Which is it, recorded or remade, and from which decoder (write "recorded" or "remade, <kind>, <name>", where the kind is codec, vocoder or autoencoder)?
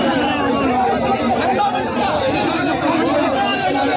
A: recorded